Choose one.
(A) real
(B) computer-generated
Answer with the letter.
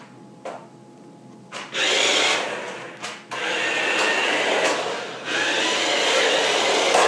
A